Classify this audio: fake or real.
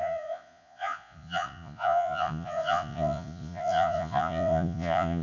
fake